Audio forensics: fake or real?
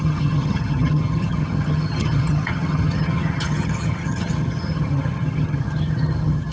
fake